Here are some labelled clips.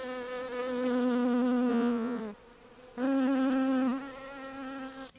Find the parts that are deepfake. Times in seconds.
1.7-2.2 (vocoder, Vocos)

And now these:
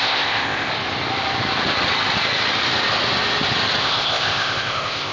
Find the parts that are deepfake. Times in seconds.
0.0-0.7 (codec, ZipCodec); 3.8-5.1

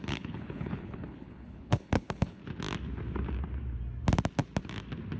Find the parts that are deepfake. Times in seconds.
0.0-2.4 (codec, HILCodec)

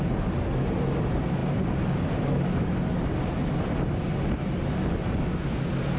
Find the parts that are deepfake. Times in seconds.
none

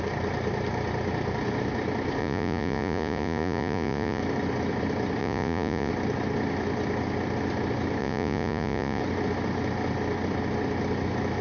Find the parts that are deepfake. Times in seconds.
2.2-4.2 (vocoder, Vocos); 5.2-5.9; 8.0-9.0